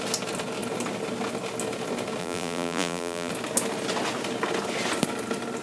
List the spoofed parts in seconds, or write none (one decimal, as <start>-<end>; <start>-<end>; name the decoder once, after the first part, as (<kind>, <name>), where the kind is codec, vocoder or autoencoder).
2.2-3.3 (vocoder, BigVGAN v2)